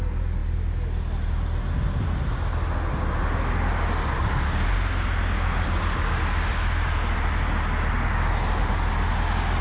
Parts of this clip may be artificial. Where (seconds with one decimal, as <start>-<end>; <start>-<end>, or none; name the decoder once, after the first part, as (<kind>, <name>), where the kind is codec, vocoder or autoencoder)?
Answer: none